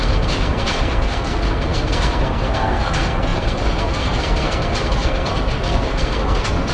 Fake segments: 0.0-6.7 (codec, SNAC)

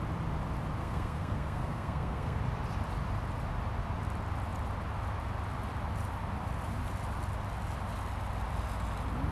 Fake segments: 0.8-2.4 (codec, SNAC)

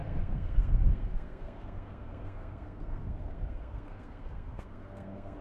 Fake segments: 0.0-5.4 (codec, SNAC)

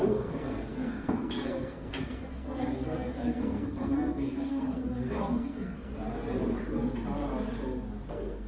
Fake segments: 0.0-5.9 (codec, SNAC); 8.1-8.5

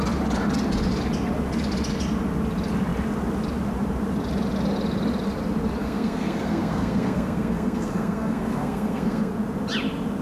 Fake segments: 5.8-9.3 (codec, SNAC)

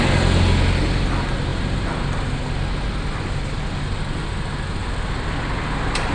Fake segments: none